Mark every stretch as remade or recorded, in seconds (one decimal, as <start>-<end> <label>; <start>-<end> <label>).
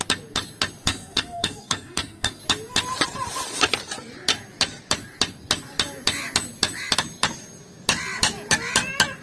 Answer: 0.0-0.9 recorded; 0.9-2.4 remade; 2.4-9.2 recorded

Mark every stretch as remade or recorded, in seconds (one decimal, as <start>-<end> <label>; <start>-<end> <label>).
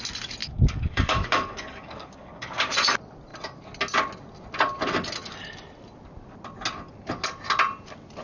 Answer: 0.0-0.4 recorded; 0.4-2.7 remade; 2.7-8.2 recorded